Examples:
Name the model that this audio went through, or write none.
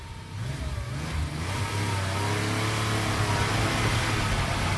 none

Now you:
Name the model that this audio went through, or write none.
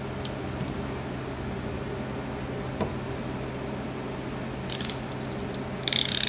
none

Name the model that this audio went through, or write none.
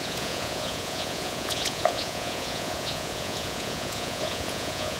vocoder, Vocos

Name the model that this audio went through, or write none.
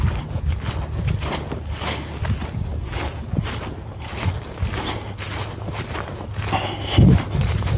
none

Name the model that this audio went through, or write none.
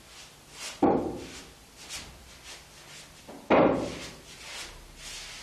none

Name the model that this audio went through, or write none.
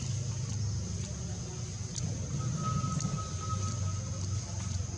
none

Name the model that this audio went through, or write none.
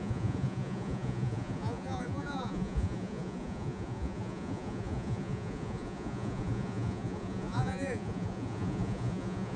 vocoder, Vocos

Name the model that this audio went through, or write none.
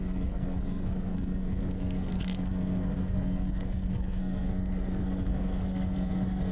codec, SNAC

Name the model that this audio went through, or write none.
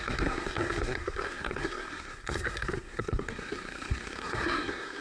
codec, SNAC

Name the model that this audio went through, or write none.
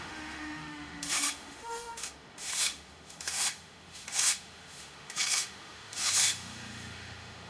autoencoder, DAC-VAE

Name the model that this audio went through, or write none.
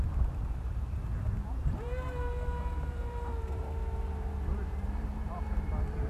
vocoder, BigVGAN v2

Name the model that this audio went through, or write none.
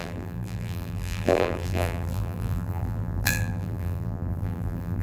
vocoder, BigVGAN v2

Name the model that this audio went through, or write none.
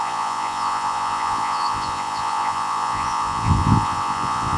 vocoder, Vocos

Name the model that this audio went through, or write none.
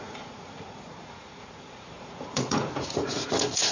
vocoder, Vocos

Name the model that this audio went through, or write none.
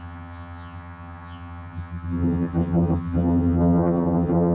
vocoder, HiFi-GAN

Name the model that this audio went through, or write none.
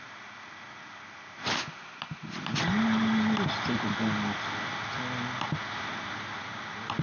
none